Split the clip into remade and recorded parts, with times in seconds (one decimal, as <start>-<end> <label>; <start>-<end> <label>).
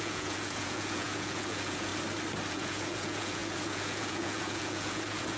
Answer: 0.0-1.9 remade; 1.9-2.5 recorded; 2.5-5.4 remade